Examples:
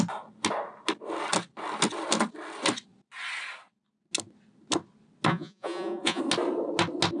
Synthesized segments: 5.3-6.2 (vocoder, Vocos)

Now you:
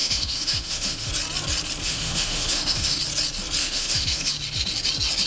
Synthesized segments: 0.0-1.1 (autoencoder, DAC-VAE); 1.8-3.0; 3.6-4.3

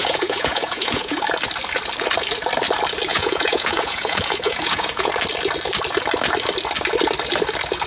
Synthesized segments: 0.0-1.2 (vocoder, Vocos); 3.1-5.1

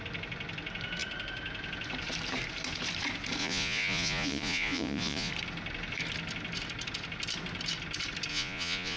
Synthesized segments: 3.4-5.3 (vocoder, Vocos); 8.3-9.0

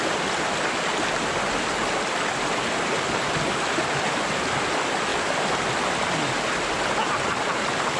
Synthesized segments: none